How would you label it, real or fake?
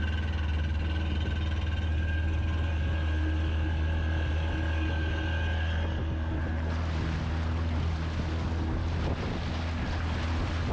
real